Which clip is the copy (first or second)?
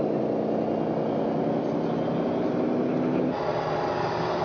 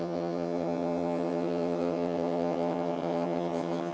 second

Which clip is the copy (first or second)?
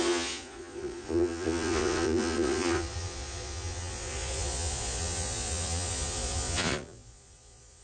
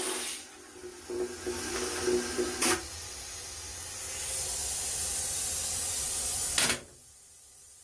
first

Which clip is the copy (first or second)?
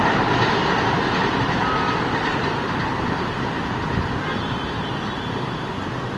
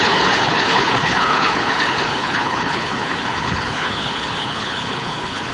second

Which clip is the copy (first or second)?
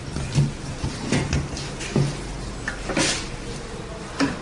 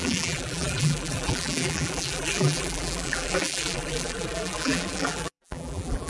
second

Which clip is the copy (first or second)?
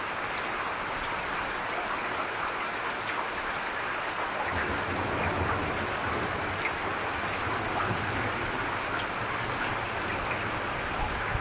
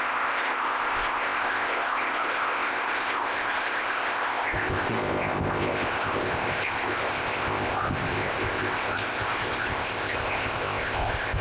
second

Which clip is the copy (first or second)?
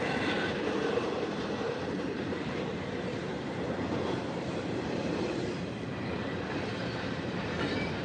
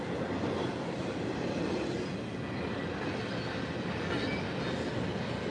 first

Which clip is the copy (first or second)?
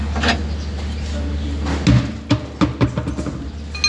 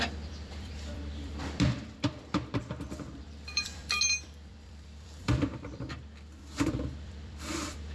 second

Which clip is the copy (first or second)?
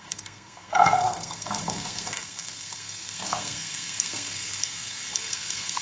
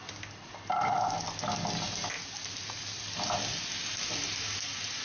first